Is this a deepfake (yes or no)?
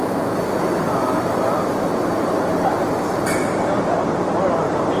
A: yes